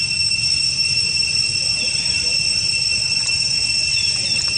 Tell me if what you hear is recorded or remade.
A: recorded